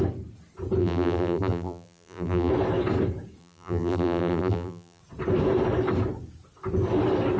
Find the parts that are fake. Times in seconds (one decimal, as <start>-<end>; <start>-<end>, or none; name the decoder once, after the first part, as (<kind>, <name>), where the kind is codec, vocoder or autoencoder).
0.8-2.5 (vocoder, BigVGAN v2); 3.4-5.0